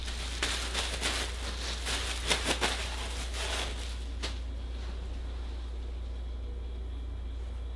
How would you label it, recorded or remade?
recorded